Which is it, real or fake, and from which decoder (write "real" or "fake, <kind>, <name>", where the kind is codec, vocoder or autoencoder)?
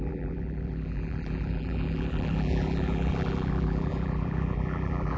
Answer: fake, vocoder, BigVGAN v2